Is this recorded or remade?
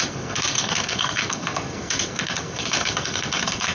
remade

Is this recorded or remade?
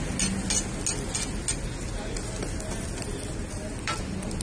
recorded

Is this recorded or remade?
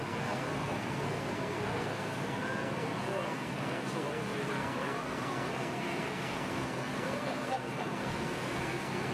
remade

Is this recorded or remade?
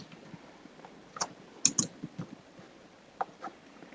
recorded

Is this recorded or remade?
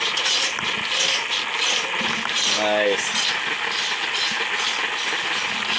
recorded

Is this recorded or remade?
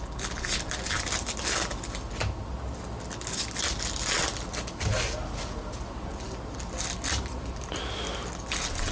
recorded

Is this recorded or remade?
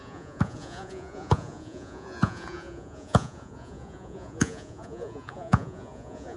remade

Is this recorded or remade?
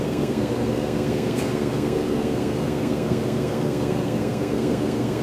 remade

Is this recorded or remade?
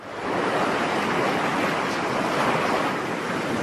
recorded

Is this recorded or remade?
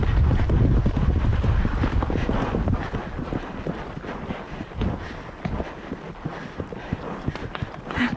recorded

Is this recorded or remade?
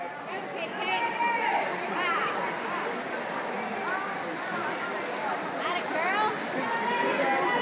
recorded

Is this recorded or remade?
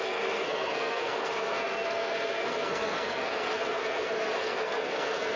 remade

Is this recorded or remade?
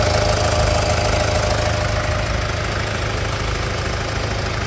recorded